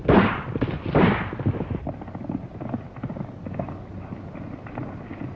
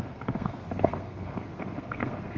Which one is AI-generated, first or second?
second